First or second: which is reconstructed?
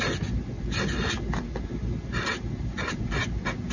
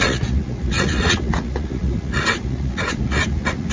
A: second